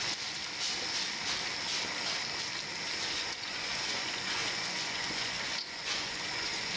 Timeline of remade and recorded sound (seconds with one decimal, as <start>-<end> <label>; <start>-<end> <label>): 0.0-0.4 remade; 0.4-3.1 recorded; 3.1-6.8 remade